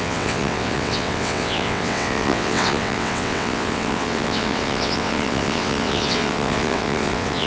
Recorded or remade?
remade